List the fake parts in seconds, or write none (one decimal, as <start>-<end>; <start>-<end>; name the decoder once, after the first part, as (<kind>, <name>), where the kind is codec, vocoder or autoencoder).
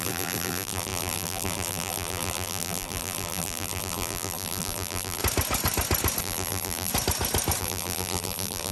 0.0-5.2 (vocoder, BigVGAN v2); 6.2-6.9; 7.6-8.7